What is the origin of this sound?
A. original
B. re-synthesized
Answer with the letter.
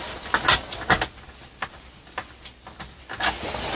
A